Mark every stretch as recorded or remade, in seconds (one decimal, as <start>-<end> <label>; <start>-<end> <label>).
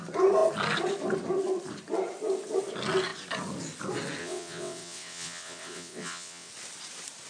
0.0-4.2 recorded; 4.2-6.5 remade; 6.5-7.3 recorded